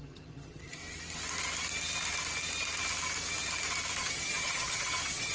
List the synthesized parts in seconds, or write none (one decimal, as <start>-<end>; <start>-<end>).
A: 0.0-0.8; 4.0-5.3